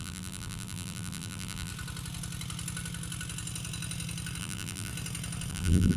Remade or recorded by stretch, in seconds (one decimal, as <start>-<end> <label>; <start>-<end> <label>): 0.0-1.7 remade; 1.7-4.4 recorded; 4.4-4.9 remade; 4.9-5.5 recorded; 5.5-6.0 remade